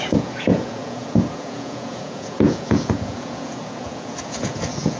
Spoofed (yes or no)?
yes